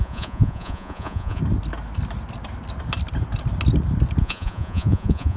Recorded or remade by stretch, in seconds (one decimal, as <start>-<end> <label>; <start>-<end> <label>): 0.0-1.4 remade; 1.4-4.2 recorded; 4.2-5.4 remade